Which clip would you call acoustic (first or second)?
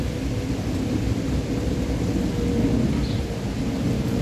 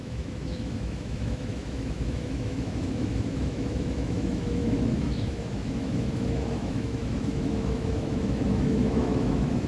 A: first